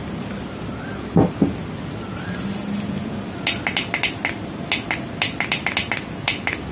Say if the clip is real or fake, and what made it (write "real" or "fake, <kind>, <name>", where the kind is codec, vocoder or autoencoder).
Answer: real